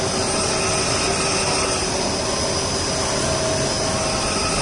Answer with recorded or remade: recorded